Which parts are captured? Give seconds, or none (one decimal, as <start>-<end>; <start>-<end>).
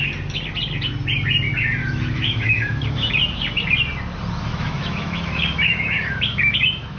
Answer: 0.0-1.8; 3.1-4.5